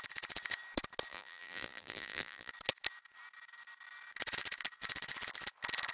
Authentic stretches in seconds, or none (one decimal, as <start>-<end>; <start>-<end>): 0.0-1.1; 2.5-5.9